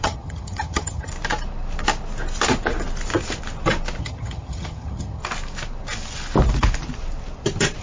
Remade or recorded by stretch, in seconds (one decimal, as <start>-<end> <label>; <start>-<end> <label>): 0.0-1.1 remade; 1.1-4.0 recorded; 4.0-5.2 remade; 5.2-7.8 recorded